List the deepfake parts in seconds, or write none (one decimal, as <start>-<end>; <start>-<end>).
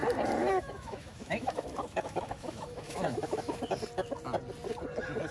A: 0.4-3.6